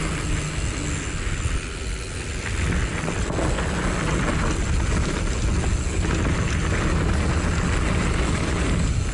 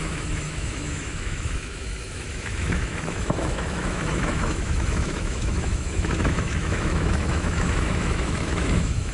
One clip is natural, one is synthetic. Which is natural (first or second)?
first